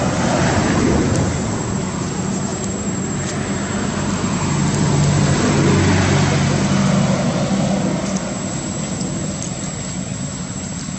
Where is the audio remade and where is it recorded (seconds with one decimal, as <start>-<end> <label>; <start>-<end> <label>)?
0.0-11.0 recorded